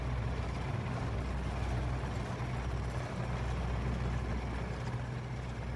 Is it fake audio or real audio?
real